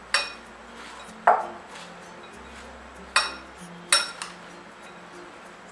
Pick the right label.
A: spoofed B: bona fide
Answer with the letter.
B